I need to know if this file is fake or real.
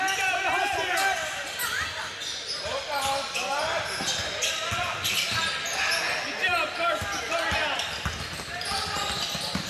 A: real